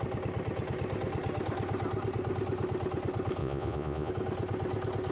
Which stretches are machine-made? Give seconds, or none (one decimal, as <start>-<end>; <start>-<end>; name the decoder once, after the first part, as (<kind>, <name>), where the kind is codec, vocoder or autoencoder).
3.4-4.1 (vocoder, Vocos)